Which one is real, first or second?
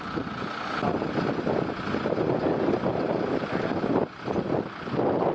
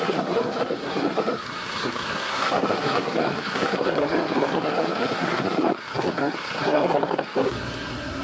first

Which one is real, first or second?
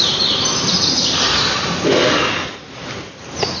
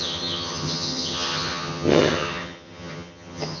first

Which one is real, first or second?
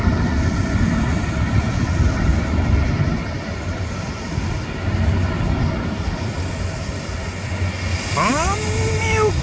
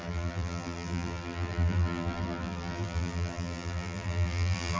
first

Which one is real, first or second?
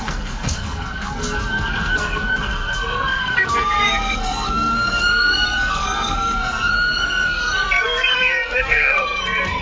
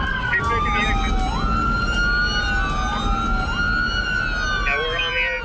second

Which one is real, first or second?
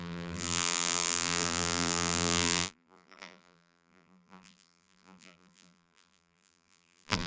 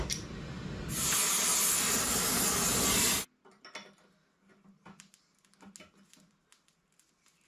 second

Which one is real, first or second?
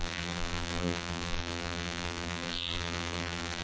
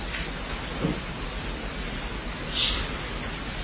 second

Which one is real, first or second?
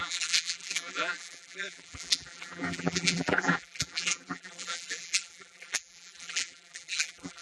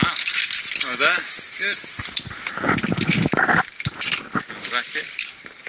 second